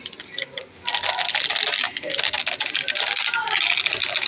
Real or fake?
real